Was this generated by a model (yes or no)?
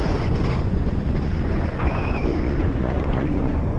yes